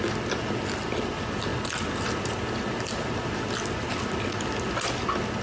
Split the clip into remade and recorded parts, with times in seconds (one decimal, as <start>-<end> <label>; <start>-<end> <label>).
0.0-5.4 recorded